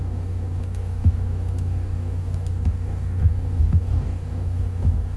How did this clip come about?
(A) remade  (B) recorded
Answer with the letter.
A